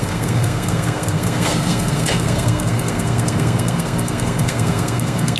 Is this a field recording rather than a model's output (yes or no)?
no